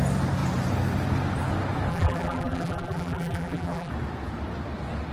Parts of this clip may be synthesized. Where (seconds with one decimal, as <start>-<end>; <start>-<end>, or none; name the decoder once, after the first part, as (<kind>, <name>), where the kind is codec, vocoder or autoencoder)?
1.9-3.9 (vocoder, BigVGAN v2)